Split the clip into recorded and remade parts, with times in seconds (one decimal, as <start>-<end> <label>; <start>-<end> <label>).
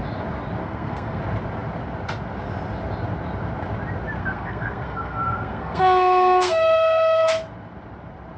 0.0-0.6 recorded; 0.6-1.2 remade; 1.2-4.2 recorded; 4.2-7.3 remade; 7.3-8.4 recorded